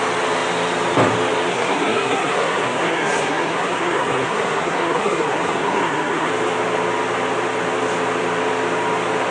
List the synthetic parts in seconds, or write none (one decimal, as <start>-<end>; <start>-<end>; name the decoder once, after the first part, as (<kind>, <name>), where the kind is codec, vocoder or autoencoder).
1.5-6.3 (codec, SNAC)